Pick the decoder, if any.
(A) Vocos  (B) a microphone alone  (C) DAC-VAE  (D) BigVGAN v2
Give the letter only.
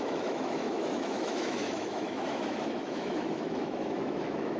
C